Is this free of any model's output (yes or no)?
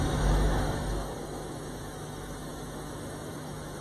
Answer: no